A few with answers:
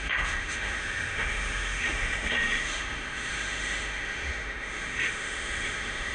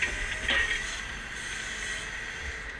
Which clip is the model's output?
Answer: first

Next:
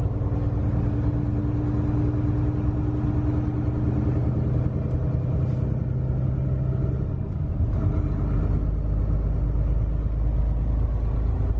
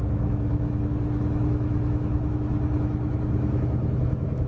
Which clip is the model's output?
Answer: second